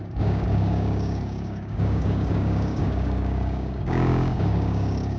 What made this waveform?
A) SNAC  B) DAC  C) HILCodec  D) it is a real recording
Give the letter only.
B